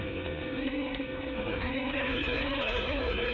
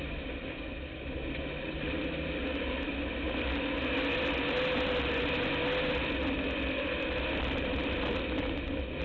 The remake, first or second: first